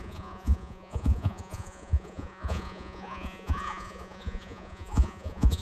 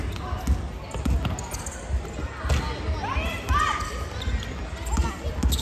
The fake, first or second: first